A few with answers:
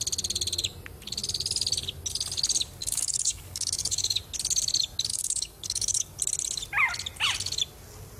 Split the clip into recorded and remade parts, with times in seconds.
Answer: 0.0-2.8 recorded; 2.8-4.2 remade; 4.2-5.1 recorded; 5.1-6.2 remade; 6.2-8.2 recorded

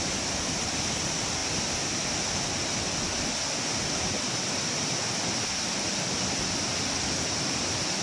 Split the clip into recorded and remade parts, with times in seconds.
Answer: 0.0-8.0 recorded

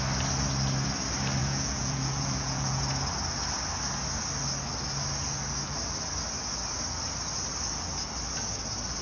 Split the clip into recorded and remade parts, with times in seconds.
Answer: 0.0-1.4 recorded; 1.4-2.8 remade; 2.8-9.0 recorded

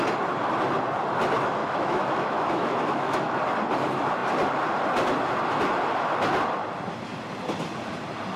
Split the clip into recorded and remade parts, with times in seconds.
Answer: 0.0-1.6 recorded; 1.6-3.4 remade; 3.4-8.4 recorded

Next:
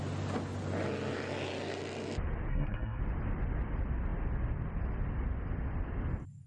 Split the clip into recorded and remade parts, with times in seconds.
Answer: 0.0-2.5 recorded; 2.5-3.0 remade; 3.0-6.5 recorded

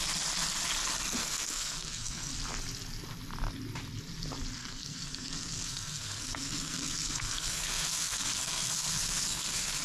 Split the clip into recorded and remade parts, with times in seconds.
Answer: 0.0-1.2 recorded; 1.2-2.3 remade; 2.3-4.6 recorded; 4.6-9.8 remade

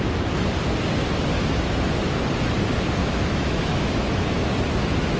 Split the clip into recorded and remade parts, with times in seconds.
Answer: 0.0-3.0 recorded; 3.0-4.7 remade; 4.7-5.2 recorded